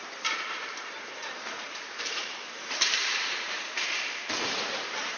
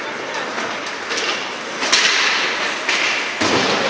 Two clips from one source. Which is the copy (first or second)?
first